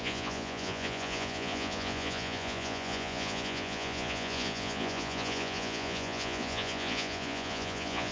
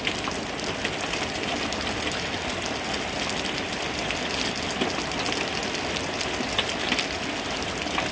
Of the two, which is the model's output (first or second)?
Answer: first